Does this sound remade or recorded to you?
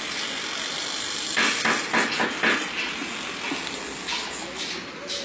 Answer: recorded